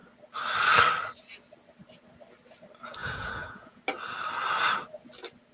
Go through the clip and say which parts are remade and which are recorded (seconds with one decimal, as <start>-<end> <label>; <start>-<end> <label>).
0.0-3.0 recorded; 3.0-3.8 remade; 3.8-5.5 recorded